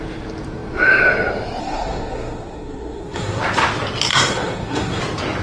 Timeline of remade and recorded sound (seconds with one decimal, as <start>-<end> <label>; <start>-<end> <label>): 0.0-1.6 recorded; 1.6-3.4 remade; 3.4-4.1 recorded; 4.1-5.0 remade; 5.0-5.4 recorded